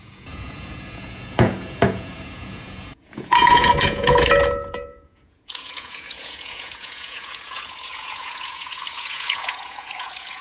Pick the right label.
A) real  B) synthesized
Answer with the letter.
B